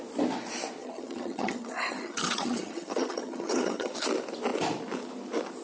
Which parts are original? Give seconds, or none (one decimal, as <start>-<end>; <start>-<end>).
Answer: 0.0-0.8; 3.9-5.6